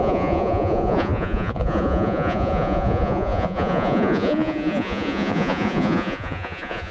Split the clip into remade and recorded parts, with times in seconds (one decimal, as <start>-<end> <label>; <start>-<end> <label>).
0.0-6.9 remade